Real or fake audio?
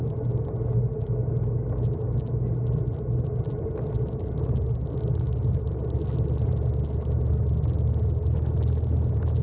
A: real